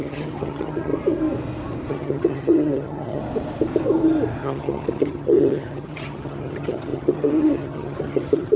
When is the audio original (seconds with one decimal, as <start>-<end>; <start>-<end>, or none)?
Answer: 0.9-1.9; 3.2-4.4